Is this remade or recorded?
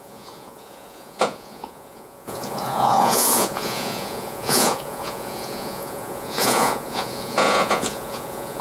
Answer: remade